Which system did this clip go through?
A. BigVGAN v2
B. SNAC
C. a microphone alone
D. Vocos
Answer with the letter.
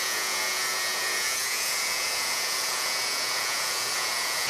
D